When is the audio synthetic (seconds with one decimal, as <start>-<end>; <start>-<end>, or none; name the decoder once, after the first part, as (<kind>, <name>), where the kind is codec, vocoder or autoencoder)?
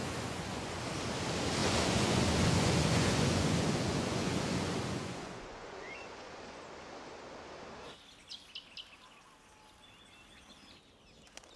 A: 0.0-0.8 (vocoder, Vocos); 1.6-6.6